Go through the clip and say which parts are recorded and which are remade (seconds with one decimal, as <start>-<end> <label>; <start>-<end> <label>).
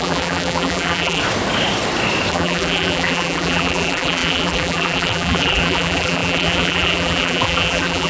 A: 0.0-1.2 remade; 1.2-2.3 recorded; 2.3-8.1 remade